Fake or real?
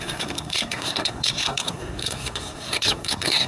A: fake